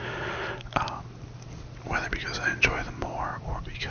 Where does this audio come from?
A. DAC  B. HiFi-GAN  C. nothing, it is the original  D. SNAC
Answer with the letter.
C